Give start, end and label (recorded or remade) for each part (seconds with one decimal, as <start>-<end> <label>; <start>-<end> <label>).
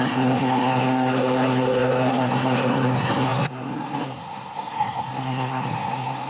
0.0-6.3 remade